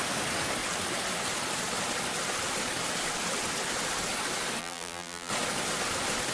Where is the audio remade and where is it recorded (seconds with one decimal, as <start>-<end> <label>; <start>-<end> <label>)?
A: 0.0-4.6 recorded; 4.6-5.3 remade; 5.3-6.3 recorded